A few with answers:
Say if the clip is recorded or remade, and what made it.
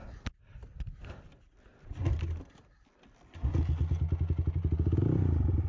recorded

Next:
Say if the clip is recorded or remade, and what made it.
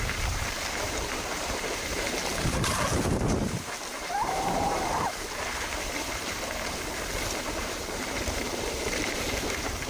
remade, vocoder, BigVGAN v2